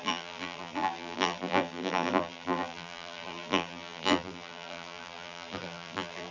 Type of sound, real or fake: fake